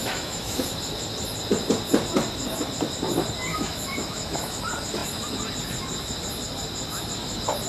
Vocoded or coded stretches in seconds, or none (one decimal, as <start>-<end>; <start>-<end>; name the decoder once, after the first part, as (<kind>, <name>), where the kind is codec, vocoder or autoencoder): 0.0-0.6 (autoencoder, DAC-VAE); 3.5-4.6